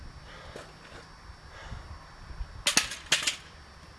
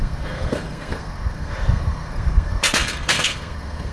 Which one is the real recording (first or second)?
first